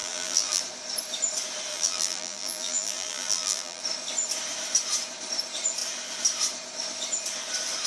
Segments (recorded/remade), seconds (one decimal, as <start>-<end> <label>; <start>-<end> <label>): 0.0-0.6 remade; 0.6-1.7 recorded; 1.7-3.8 remade; 3.8-7.9 recorded